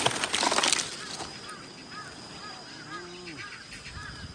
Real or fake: real